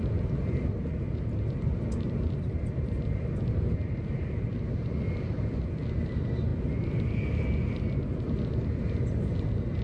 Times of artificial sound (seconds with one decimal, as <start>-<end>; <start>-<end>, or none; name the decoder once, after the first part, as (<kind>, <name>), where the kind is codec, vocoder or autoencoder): none